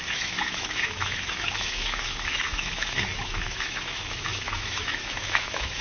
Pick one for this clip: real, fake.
fake